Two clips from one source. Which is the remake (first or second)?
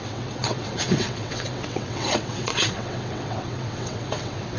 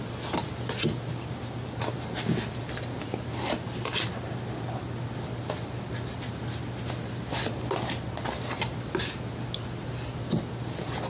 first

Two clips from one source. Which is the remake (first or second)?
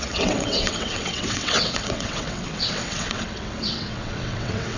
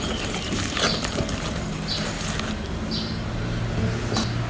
first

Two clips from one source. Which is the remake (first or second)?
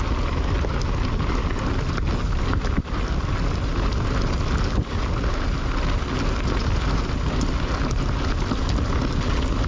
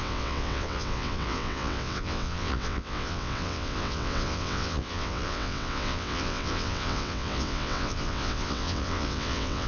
second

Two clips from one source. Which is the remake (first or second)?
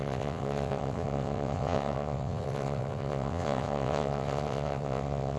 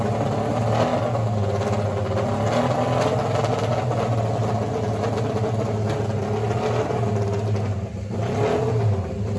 first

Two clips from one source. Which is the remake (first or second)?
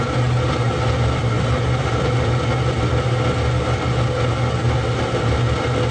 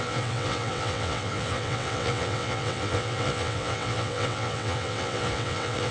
second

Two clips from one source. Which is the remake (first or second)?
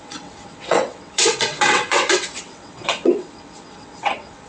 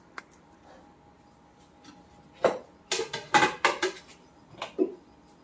first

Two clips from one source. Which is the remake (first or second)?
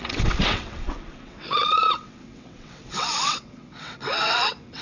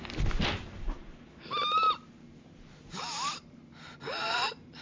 first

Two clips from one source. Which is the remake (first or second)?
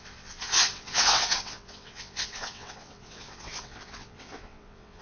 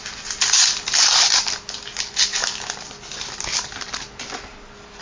first